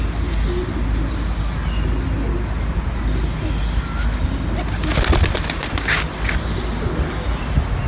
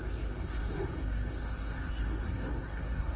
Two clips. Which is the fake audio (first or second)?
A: second